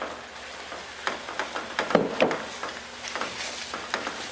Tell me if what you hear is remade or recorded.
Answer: recorded